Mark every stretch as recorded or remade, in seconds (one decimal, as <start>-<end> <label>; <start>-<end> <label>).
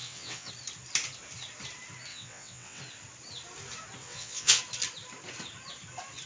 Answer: 0.0-0.5 remade; 0.5-2.1 recorded; 2.1-2.8 remade; 2.8-4.0 recorded; 4.0-4.6 remade; 4.6-6.3 recorded